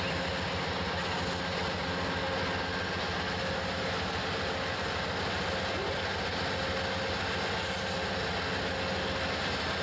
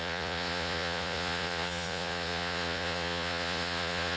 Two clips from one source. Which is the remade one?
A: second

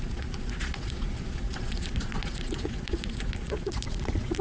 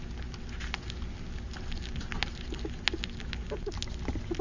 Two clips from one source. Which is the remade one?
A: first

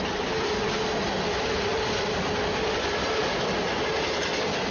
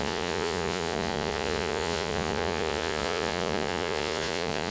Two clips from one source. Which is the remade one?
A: second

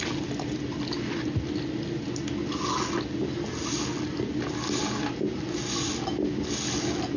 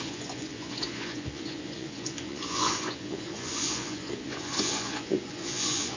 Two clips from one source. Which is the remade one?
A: second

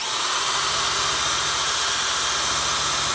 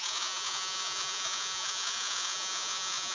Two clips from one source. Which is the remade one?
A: second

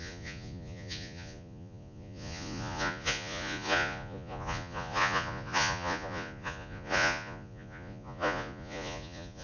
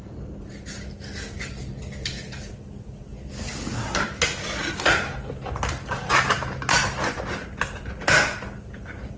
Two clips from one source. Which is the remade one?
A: first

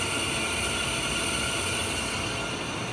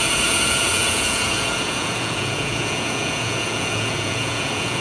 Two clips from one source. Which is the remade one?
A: second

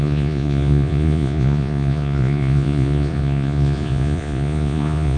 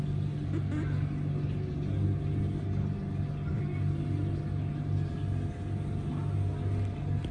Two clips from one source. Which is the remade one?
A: first